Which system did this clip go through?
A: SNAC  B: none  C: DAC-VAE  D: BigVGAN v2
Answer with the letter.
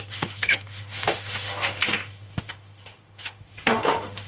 C